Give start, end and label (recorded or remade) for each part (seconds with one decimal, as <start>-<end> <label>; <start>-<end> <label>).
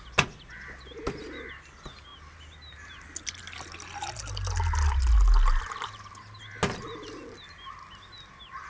0.0-8.7 recorded